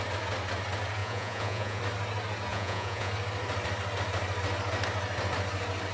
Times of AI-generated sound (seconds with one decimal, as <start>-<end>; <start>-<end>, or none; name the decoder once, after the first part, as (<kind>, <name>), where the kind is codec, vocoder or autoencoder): 1.0-1.8 (vocoder, Vocos); 2.5-3.1